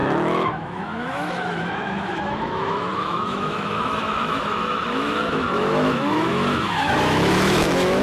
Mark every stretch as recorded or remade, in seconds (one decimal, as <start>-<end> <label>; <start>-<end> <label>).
0.0-8.0 remade